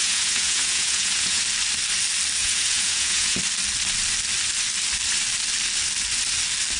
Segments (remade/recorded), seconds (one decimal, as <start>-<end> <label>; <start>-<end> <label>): 0.0-1.4 remade; 1.4-2.4 recorded; 2.4-3.4 remade; 3.4-6.8 recorded